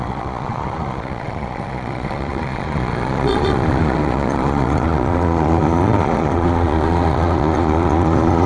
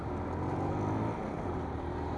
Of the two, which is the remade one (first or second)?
first